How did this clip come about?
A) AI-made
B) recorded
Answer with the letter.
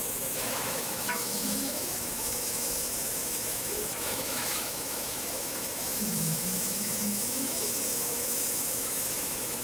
A